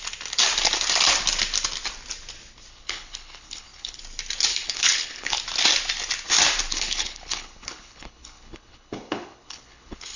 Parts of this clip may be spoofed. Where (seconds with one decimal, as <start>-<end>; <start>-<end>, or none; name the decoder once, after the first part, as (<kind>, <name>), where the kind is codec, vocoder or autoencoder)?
2.7-4.0 (codec, HILCodec); 4.5-5.4; 6.7-10.2